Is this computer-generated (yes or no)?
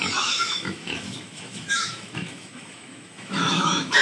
yes